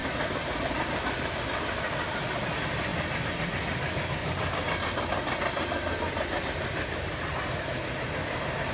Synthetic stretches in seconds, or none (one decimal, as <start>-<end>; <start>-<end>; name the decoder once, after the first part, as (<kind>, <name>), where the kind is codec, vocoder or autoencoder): none